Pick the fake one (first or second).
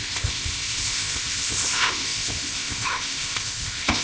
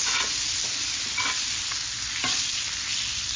first